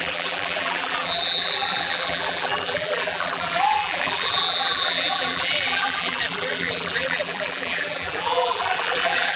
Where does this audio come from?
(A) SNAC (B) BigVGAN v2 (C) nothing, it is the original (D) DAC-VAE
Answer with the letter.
B